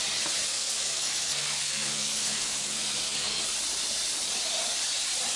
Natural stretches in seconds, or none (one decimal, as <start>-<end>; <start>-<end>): 0.0-0.5; 3.4-5.4